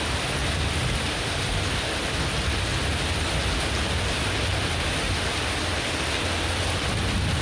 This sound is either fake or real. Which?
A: real